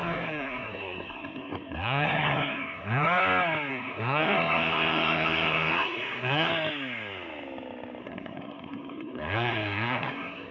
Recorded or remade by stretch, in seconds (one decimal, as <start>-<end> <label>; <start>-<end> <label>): 0.0-3.2 remade; 3.2-3.7 recorded; 3.7-6.5 remade; 6.5-8.0 recorded; 8.0-10.5 remade